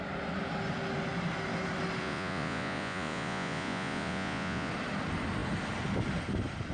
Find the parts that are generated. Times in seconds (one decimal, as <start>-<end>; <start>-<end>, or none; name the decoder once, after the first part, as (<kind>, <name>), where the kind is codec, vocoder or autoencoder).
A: 2.0-4.7 (vocoder, Vocos)